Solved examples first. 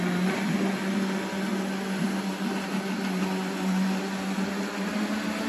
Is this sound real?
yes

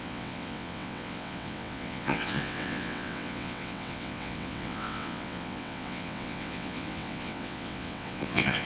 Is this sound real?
no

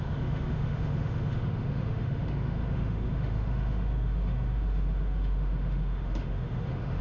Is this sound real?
no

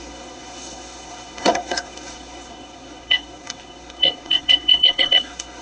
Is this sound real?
no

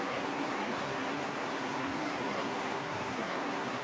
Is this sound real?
no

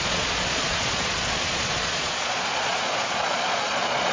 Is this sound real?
no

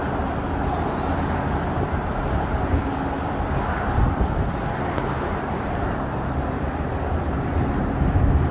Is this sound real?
no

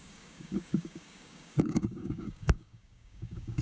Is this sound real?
no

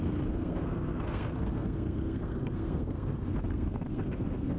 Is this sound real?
no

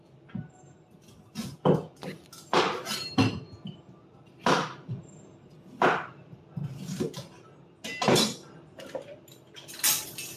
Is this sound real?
yes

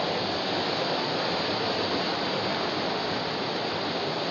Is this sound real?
yes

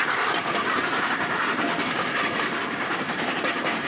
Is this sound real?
no